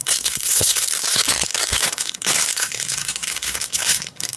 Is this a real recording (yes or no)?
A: no